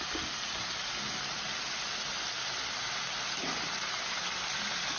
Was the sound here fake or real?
fake